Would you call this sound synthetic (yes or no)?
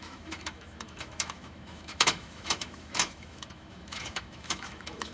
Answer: yes